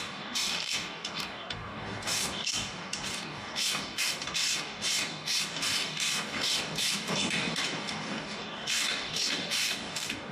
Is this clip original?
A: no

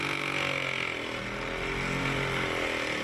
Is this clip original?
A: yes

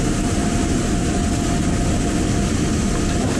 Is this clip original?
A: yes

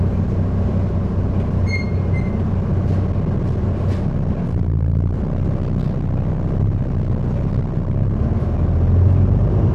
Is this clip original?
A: yes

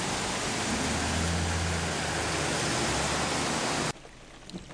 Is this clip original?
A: yes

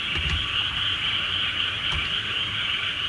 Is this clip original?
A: yes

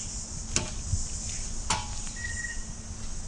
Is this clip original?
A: yes